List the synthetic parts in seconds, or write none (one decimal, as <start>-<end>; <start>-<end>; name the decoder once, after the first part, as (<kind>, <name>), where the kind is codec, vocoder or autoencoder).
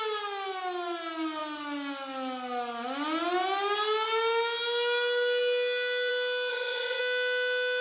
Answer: 6.5-7.0 (vocoder, HiFi-GAN)